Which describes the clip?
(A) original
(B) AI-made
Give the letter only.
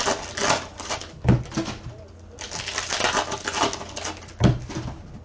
A